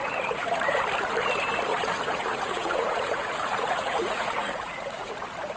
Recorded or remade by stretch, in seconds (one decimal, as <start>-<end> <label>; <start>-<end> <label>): 0.0-0.8 remade; 0.8-1.7 recorded; 1.7-5.1 remade; 5.1-5.6 recorded